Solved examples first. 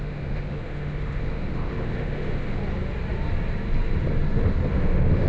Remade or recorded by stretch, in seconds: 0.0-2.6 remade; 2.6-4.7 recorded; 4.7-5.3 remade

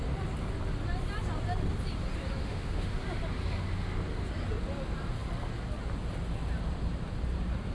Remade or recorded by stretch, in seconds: 0.0-2.4 recorded; 2.4-2.9 remade; 2.9-7.7 recorded

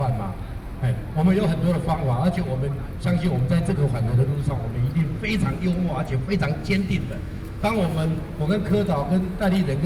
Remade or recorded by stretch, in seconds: 0.0-6.6 recorded; 6.6-8.2 remade; 8.2-9.9 recorded

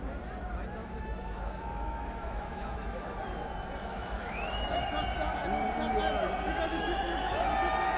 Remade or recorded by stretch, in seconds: 0.0-0.8 recorded; 0.8-3.2 remade; 3.2-3.8 recorded; 3.8-4.8 remade; 4.8-6.7 recorded; 6.7-7.5 remade; 7.5-8.0 recorded

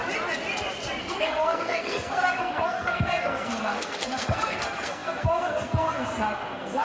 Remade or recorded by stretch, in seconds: 0.0-1.0 recorded; 1.0-6.8 remade

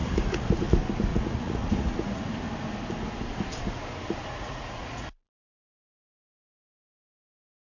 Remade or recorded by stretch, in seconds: 0.0-0.5 remade; 0.5-1.1 recorded; 1.1-2.2 remade; 2.2-4.3 recorded; 4.3-5.1 remade; 5.1-7.8 recorded